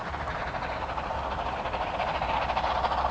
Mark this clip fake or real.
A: real